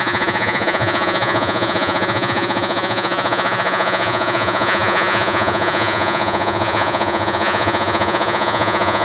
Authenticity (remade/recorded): remade